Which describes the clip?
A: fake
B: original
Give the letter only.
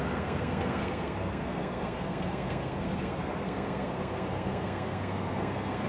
A